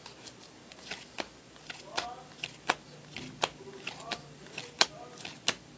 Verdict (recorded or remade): recorded